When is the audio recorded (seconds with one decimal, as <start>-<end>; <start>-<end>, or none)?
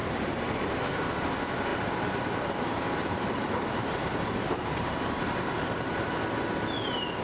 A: 0.8-1.7; 5.9-7.2